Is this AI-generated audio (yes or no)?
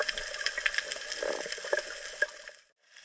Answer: no